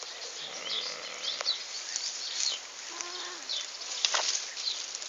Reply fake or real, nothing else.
real